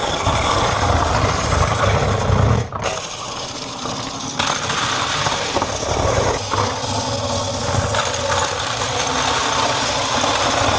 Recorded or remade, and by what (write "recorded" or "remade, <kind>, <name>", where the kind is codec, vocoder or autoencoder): recorded